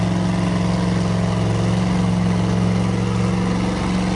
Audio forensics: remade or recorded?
recorded